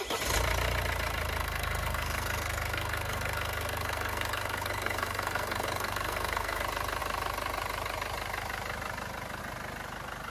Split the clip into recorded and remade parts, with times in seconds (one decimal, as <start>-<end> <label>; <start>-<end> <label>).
0.0-1.4 recorded; 1.4-6.6 remade; 6.6-10.3 recorded